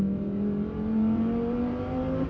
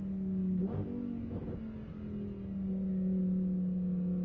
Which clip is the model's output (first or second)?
first